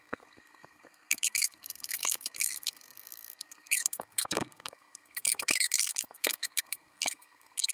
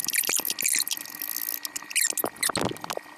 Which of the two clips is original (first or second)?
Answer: second